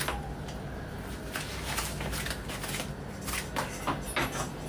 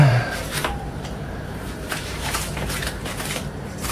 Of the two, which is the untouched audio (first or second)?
first